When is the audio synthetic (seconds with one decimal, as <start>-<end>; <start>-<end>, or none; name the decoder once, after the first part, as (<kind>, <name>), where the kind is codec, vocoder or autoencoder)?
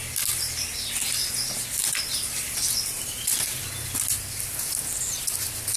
1.8-4.8 (vocoder, BigVGAN v2)